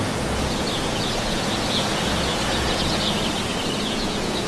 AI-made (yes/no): yes